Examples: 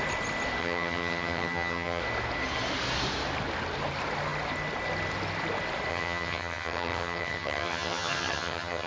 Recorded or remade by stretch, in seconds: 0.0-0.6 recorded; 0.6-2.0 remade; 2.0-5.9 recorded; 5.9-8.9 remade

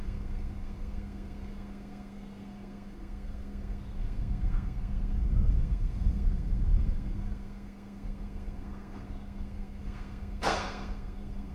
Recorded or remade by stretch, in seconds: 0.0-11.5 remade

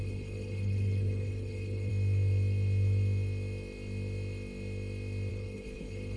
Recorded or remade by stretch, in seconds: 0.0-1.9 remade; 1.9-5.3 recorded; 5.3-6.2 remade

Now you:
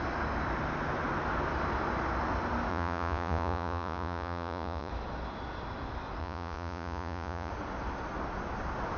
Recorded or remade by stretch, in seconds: 0.0-2.7 recorded; 2.7-4.9 remade; 4.9-6.2 recorded; 6.2-7.5 remade; 7.5-9.0 recorded

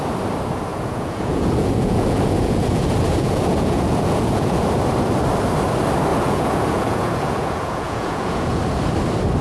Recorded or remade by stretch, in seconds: 0.0-0.7 recorded; 0.7-4.7 remade; 4.7-6.1 recorded; 6.1-8.6 remade; 8.6-9.4 recorded

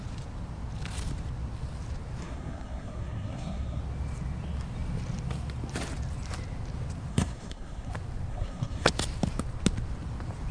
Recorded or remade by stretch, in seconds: 0.0-2.2 recorded; 2.2-3.8 remade; 3.8-7.1 recorded; 7.1-7.9 remade; 7.9-8.3 recorded; 8.3-8.9 remade; 8.9-10.5 recorded